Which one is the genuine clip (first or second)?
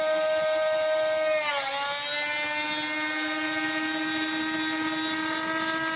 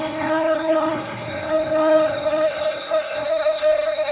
first